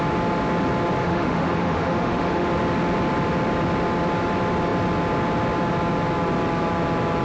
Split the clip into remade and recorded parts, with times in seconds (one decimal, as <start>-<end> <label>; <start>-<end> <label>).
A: 0.0-1.0 recorded; 1.0-2.5 remade; 2.5-7.2 recorded